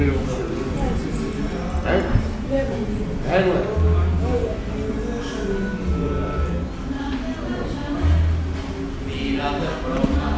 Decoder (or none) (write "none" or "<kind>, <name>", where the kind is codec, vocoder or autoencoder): none